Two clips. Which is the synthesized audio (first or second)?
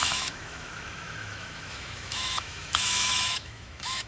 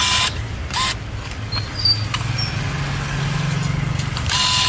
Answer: first